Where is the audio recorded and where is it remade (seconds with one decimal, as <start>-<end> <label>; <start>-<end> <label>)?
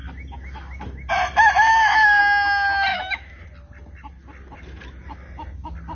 0.0-1.7 recorded; 1.7-2.2 remade; 2.2-2.9 recorded; 2.9-3.4 remade; 3.4-6.0 recorded